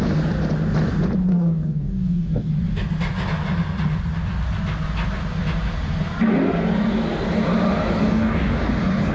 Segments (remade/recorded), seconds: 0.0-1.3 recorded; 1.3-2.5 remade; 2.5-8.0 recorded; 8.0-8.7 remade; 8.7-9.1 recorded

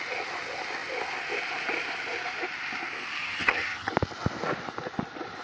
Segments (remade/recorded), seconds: 0.0-3.2 recorded; 3.2-3.9 remade; 3.9-5.4 recorded

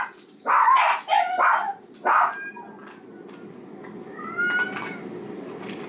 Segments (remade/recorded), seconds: 0.0-5.9 recorded

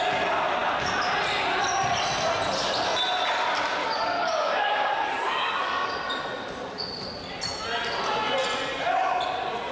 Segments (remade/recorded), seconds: 0.0-3.8 recorded; 3.8-5.9 remade; 5.9-9.7 recorded

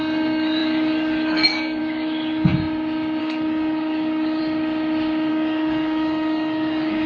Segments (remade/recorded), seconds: 0.0-2.5 remade; 2.5-3.2 recorded; 3.2-4.4 remade; 4.4-5.3 recorded; 5.3-7.1 remade